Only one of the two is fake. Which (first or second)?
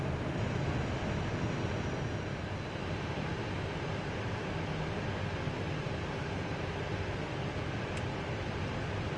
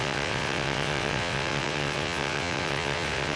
second